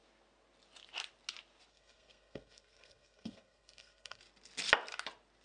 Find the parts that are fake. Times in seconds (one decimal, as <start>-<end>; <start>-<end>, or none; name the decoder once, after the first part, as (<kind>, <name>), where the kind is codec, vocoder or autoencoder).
1.7-4.2 (codec, SNAC)